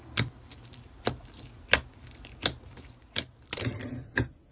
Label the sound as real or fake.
real